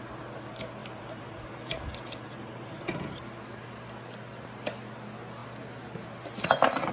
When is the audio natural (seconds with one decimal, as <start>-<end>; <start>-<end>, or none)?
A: 0.0-0.8; 2.9-6.9